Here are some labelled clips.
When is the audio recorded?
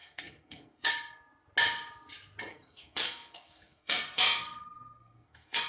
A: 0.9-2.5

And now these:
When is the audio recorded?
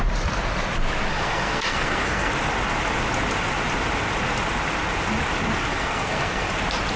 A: 0.0-1.1; 2.3-5.7; 6.5-7.0